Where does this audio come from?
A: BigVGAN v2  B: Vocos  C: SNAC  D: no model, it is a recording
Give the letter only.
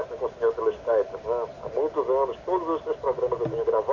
D